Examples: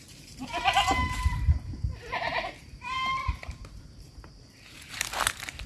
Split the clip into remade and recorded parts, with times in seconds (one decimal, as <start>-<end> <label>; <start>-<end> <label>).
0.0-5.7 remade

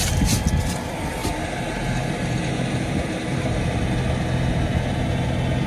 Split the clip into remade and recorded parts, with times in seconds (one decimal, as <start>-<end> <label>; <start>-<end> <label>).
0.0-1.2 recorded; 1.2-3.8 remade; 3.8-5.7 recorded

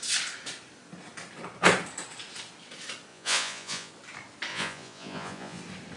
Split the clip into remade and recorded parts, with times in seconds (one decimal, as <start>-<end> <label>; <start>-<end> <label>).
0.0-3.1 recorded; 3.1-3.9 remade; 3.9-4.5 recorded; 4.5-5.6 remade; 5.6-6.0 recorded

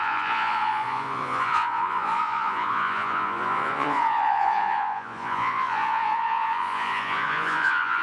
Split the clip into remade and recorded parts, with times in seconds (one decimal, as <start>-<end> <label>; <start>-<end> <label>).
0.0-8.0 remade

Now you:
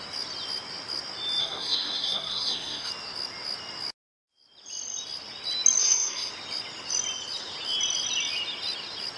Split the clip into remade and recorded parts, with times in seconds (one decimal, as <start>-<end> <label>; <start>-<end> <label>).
0.0-1.4 recorded; 1.4-2.9 remade; 2.9-5.8 recorded; 5.8-6.3 remade; 6.3-9.2 recorded

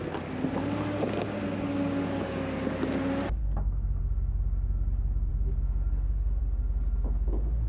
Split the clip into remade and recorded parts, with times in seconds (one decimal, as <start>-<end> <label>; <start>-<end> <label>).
0.0-3.4 recorded; 3.4-4.0 remade; 4.0-7.7 recorded